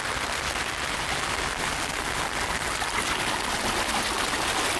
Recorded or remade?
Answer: recorded